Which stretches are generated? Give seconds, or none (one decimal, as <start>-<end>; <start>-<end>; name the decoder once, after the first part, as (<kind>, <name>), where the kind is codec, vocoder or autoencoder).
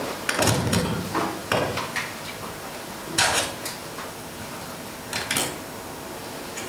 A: 1.4-2.5 (vocoder, BigVGAN v2); 3.8-4.9